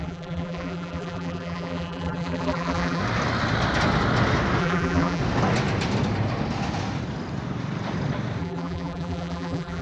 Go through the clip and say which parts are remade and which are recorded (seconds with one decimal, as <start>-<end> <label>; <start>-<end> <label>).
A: 0.0-3.0 remade; 3.0-4.6 recorded; 4.6-5.2 remade; 5.2-8.4 recorded; 8.4-9.8 remade